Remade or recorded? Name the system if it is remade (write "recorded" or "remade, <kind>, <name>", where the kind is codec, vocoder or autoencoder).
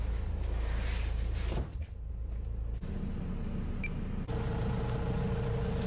recorded